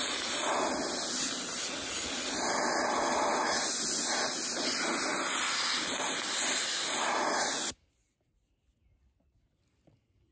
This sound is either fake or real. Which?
real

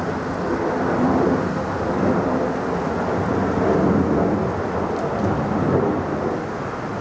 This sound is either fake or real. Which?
real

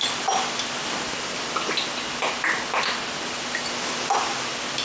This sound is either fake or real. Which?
real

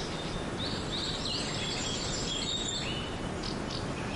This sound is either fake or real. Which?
real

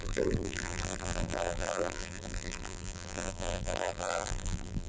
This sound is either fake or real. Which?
fake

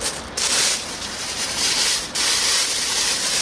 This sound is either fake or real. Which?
fake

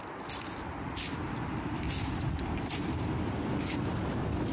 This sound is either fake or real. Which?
real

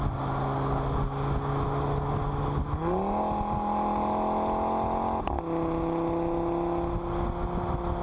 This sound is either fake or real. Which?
real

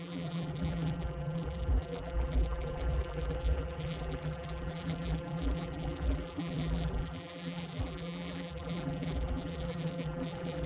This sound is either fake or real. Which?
fake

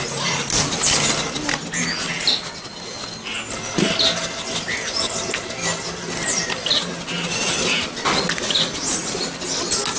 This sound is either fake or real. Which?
real